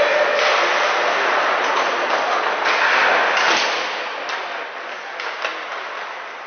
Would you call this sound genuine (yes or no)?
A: yes